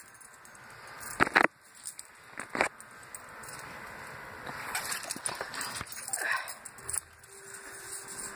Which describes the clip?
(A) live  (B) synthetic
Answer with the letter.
A